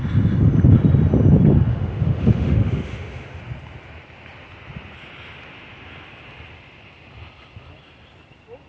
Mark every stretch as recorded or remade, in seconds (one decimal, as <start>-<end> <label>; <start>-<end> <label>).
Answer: 0.0-1.7 recorded; 1.7-3.4 remade; 3.4-8.7 recorded